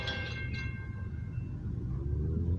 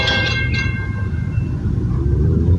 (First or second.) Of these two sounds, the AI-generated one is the second